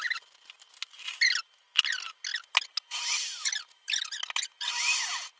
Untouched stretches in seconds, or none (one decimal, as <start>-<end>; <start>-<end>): 0.0-5.4